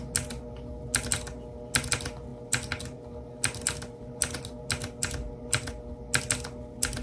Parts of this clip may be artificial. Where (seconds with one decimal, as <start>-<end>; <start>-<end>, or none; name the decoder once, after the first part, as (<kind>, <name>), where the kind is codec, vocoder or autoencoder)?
none